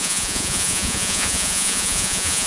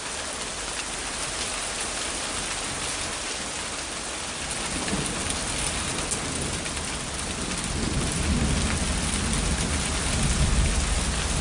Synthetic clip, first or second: first